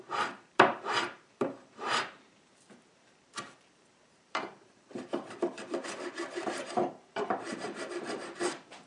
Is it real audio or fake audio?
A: fake